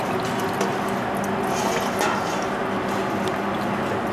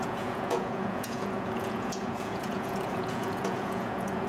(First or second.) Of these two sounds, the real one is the first